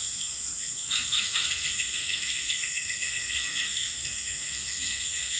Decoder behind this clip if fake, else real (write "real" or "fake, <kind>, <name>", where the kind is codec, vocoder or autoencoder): fake, codec, SNAC